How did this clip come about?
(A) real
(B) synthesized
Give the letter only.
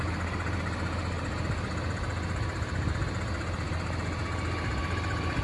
A